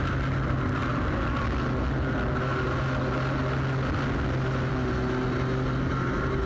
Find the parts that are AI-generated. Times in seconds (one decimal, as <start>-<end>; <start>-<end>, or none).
none